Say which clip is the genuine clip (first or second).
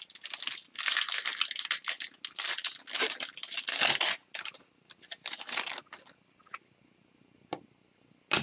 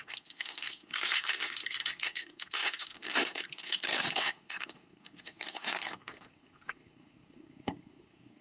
first